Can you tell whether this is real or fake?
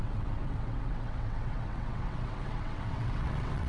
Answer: fake